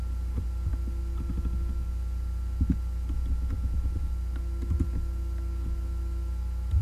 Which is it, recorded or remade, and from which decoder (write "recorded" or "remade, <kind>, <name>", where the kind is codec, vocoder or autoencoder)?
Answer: recorded